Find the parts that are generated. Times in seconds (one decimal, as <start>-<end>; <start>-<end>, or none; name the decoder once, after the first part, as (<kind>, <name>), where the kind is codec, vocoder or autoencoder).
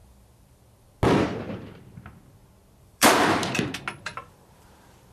2.8-3.4 (vocoder, BigVGAN v2); 4.0-5.1